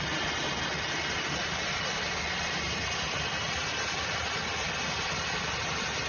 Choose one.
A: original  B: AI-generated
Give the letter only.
B